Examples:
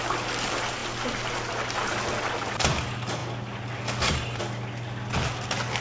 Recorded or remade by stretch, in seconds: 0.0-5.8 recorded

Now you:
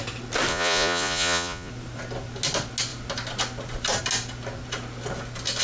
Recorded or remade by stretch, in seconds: 0.0-0.5 recorded; 0.5-1.7 remade; 1.7-5.6 recorded

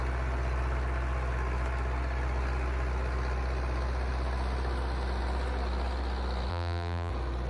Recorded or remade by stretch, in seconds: 0.0-6.5 recorded; 6.5-7.1 remade; 7.1-7.5 recorded

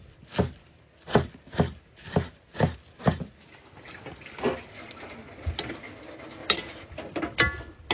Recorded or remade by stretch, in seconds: 0.0-7.9 recorded

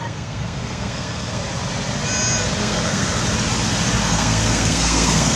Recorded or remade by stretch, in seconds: 0.0-1.4 remade; 1.4-2.6 recorded; 2.6-3.2 remade; 3.2-4.0 recorded; 4.0-5.4 remade

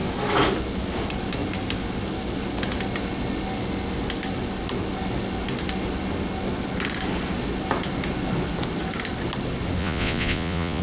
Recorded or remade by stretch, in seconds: 0.0-9.8 recorded; 9.8-10.8 remade

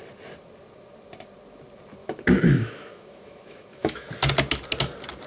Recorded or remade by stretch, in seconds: 0.0-2.0 recorded; 2.0-4.1 remade; 4.1-5.3 recorded